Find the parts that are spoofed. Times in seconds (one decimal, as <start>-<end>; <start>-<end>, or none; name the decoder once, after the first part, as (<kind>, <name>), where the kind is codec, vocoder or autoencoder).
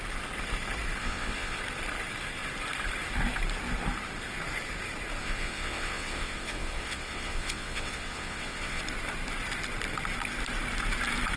1.0-1.6 (vocoder, WaveNeXt); 5.2-8.8